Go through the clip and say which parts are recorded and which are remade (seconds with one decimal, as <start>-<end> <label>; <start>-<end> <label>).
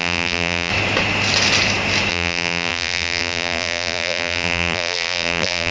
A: 0.0-0.7 remade; 0.7-2.1 recorded; 2.1-5.7 remade